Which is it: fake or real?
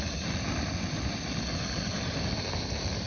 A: real